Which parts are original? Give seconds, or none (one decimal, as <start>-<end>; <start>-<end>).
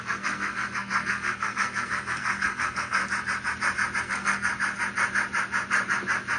3.0-4.0; 4.5-6.4